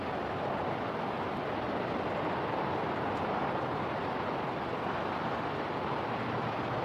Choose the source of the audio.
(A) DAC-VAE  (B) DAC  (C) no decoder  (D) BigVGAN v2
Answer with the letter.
C